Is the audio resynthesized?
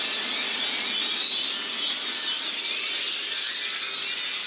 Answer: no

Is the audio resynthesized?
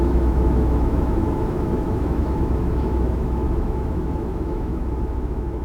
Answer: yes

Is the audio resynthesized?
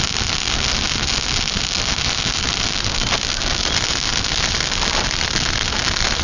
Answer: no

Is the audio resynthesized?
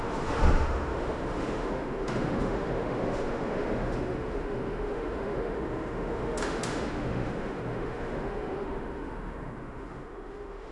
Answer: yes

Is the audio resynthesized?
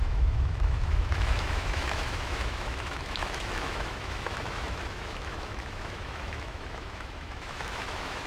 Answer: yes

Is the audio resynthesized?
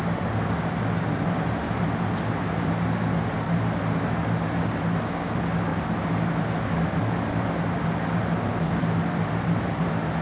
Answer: no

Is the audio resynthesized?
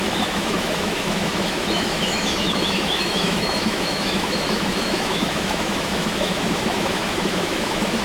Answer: yes